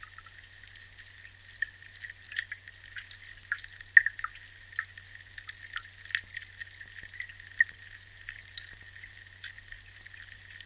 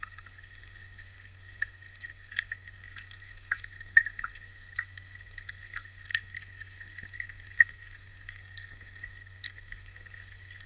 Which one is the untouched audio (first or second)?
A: first